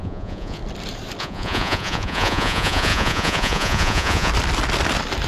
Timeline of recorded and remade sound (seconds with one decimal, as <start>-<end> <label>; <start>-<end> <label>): 0.0-0.6 remade; 0.6-1.2 recorded; 1.2-4.3 remade; 4.3-5.3 recorded